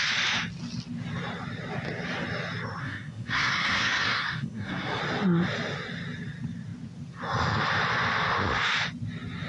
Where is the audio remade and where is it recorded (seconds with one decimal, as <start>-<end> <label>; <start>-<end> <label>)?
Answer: 0.0-2.8 recorded; 2.8-5.0 remade; 5.0-9.5 recorded